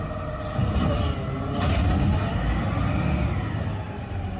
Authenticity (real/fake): real